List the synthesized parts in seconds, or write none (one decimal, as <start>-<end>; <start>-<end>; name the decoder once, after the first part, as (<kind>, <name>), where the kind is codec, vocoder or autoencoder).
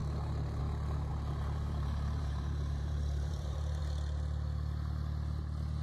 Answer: 0.0-0.6 (vocoder, BigVGAN v2); 1.1-3.8